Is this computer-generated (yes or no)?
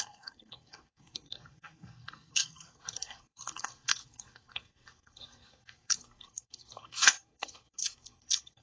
yes